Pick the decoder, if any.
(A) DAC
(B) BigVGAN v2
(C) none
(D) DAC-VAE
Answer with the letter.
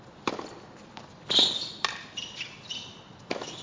C